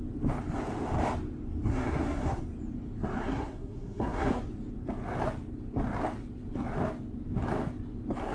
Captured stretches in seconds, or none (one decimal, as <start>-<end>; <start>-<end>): 0.0-1.7; 2.4-3.2; 4.4-8.3